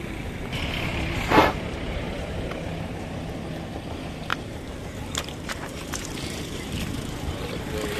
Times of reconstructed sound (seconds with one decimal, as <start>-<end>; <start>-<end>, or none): 1.4-3.2; 4.3-6.7